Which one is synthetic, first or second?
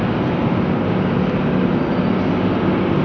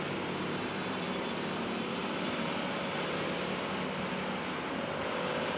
second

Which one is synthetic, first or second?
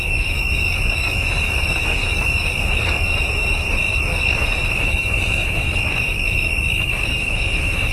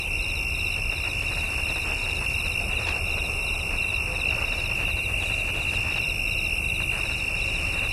first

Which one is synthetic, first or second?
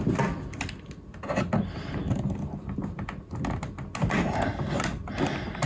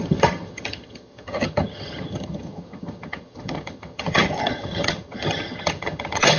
second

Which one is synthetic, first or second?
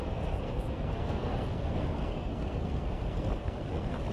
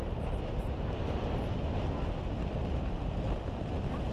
first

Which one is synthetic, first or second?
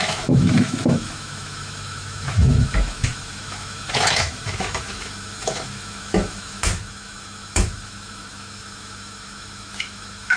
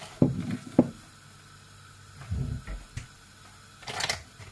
first